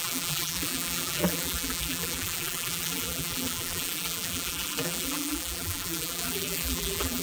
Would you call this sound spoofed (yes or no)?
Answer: yes